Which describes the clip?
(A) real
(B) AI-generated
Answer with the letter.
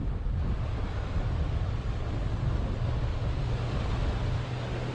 A